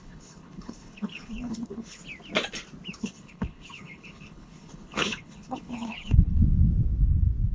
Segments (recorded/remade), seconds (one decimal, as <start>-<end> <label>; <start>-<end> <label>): 0.0-2.0 remade; 2.0-3.0 recorded; 3.0-6.4 remade; 6.4-7.5 recorded

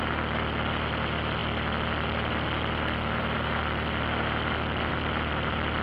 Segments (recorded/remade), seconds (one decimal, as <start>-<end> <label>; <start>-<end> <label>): 0.0-5.8 recorded